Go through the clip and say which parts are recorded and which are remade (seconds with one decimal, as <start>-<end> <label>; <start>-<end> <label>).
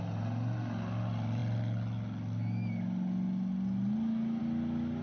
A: 0.0-5.0 recorded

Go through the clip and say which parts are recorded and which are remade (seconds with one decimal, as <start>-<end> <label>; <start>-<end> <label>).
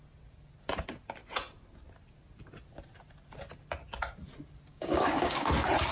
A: 0.0-4.7 recorded; 4.7-5.5 remade; 5.5-5.9 recorded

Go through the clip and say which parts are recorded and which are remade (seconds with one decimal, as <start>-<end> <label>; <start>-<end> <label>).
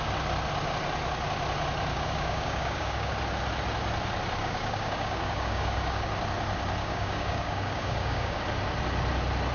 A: 0.0-1.9 recorded; 1.9-3.1 remade; 3.1-4.4 recorded; 4.4-6.0 remade; 6.0-6.8 recorded; 6.8-8.4 remade; 8.4-9.5 recorded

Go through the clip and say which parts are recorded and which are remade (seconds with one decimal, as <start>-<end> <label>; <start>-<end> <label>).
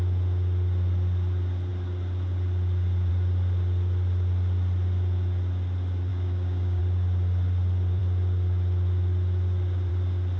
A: 0.0-6.1 recorded; 6.1-6.8 remade; 6.8-10.4 recorded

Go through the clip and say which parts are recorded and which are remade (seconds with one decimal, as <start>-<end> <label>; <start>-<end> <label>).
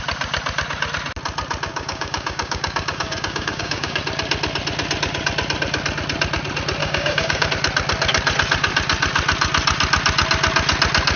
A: 0.0-1.7 recorded; 1.7-4.0 remade; 4.0-6.8 recorded; 6.8-7.5 remade; 7.5-11.2 recorded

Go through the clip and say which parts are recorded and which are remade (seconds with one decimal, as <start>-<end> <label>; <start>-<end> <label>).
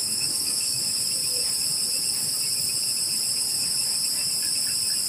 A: 0.0-0.8 remade; 0.8-5.1 recorded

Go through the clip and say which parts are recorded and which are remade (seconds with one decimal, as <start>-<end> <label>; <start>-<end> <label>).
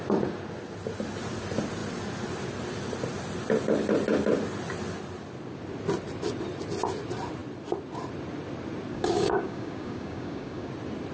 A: 0.0-8.9 recorded; 8.9-10.7 remade; 10.7-11.1 recorded